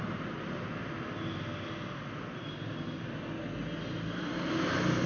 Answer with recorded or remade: recorded